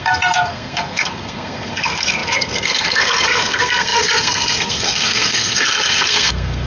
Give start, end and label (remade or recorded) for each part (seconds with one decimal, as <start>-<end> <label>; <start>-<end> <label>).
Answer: 0.0-6.7 remade